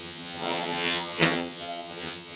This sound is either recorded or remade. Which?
remade